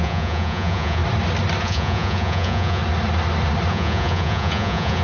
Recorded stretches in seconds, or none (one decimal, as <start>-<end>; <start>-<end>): 1.0-1.6; 2.8-3.7

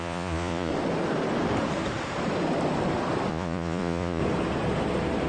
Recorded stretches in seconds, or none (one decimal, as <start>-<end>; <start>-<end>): 0.7-3.3; 4.2-5.3